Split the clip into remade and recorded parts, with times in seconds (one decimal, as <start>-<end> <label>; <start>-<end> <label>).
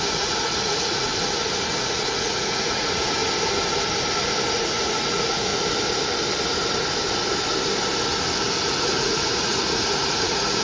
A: 0.0-1.1 remade; 1.1-1.8 recorded; 1.8-3.2 remade; 3.2-4.5 recorded; 4.5-5.5 remade; 5.5-8.7 recorded; 8.7-10.6 remade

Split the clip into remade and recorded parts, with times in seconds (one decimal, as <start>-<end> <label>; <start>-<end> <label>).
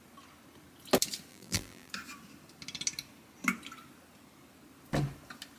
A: 0.0-1.3 recorded; 1.3-1.9 remade; 1.9-5.6 recorded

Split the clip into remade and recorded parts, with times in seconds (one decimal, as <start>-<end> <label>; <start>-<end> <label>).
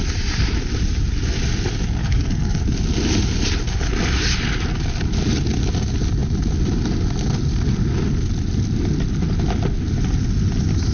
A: 0.0-2.0 recorded; 2.0-2.6 remade; 2.6-10.9 recorded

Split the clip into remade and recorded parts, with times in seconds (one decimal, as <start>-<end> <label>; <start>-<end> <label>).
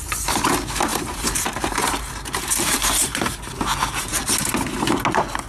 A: 0.0-0.9 recorded; 0.9-4.2 remade; 4.2-5.5 recorded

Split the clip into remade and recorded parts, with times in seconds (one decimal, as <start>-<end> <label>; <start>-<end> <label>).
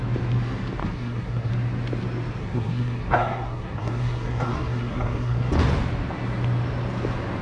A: 0.0-0.8 recorded; 0.8-1.5 remade; 1.5-2.4 recorded; 2.4-5.5 remade; 5.5-7.4 recorded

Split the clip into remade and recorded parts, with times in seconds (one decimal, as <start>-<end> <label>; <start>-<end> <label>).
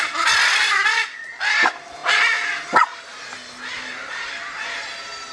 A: 0.0-5.3 recorded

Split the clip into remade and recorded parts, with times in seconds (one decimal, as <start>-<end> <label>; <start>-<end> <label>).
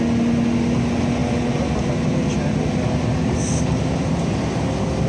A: 0.0-5.1 recorded